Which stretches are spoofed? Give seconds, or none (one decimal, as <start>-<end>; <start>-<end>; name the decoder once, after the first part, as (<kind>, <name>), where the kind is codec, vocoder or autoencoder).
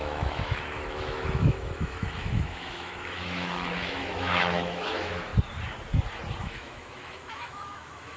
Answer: 0.0-5.3 (autoencoder, DAC-VAE); 6.4-8.2